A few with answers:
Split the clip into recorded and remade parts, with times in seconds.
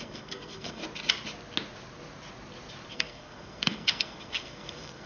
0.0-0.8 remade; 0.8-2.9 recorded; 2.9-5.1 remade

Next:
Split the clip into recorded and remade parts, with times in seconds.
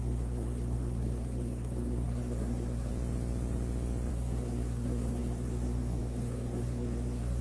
0.0-2.9 remade; 2.9-4.1 recorded; 4.1-7.4 remade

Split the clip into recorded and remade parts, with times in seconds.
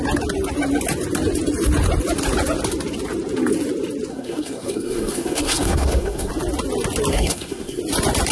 0.0-4.1 recorded; 4.1-6.3 remade; 6.3-7.1 recorded; 7.1-7.8 remade; 7.8-8.3 recorded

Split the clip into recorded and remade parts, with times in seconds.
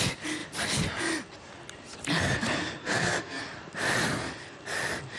0.0-2.8 recorded; 2.8-3.4 remade; 3.4-5.2 recorded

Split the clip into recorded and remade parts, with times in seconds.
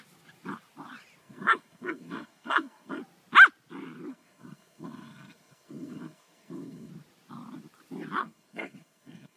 0.0-1.2 recorded; 1.2-3.0 remade; 3.0-4.1 recorded; 4.1-6.9 remade; 6.9-8.2 recorded; 8.2-9.4 remade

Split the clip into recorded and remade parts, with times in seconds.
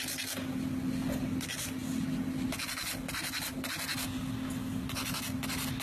0.0-5.8 recorded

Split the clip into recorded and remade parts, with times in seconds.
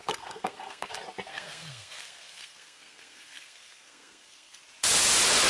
0.0-0.9 remade; 0.9-1.3 recorded; 1.3-4.6 remade; 4.6-5.5 recorded